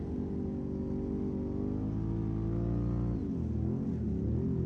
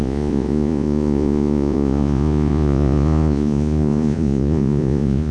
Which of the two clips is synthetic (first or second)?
second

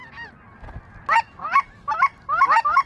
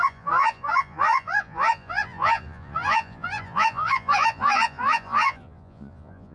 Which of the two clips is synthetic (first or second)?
second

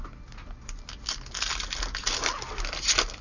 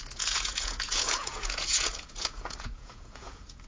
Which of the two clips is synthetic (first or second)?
second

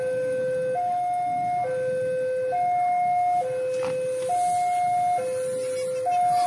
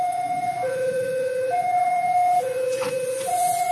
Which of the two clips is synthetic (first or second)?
second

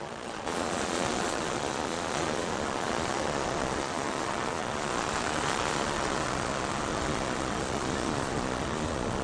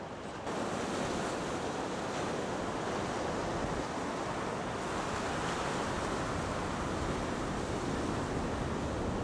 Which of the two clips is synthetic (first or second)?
first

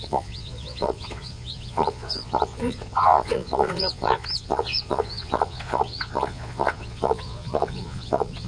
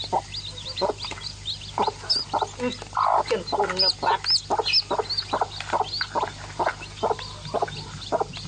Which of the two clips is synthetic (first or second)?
first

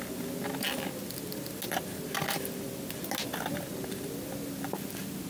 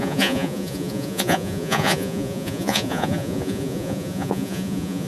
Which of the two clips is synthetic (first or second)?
second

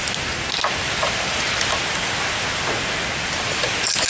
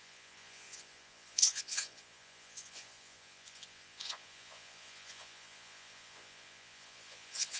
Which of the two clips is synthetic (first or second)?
second